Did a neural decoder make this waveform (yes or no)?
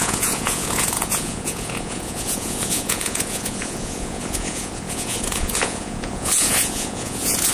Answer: yes